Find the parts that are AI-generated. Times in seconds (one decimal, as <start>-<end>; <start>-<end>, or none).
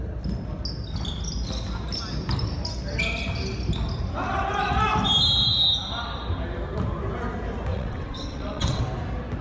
7.7-8.8